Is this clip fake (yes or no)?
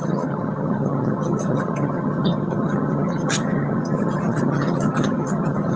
yes